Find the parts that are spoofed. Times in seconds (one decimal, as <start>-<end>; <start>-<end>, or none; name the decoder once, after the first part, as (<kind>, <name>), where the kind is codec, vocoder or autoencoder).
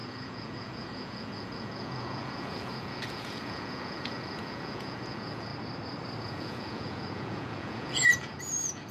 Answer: 0.0-5.5 (vocoder, Vocos); 6.2-8.9